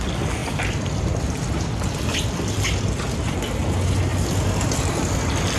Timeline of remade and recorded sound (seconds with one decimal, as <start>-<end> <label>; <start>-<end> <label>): 0.0-0.4 recorded; 0.4-2.2 remade; 2.2-5.6 recorded